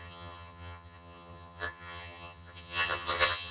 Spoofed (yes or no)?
yes